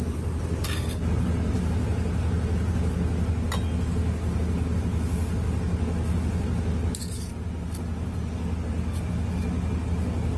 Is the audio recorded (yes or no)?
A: yes